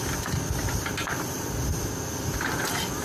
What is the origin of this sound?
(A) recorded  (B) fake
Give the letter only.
A